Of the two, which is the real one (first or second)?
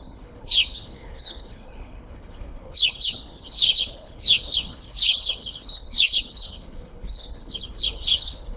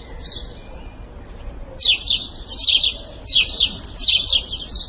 second